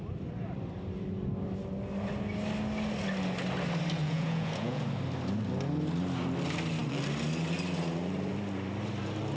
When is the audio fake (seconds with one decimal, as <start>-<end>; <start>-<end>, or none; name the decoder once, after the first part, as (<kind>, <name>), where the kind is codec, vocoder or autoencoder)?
4.0-4.8 (vocoder, Vocos)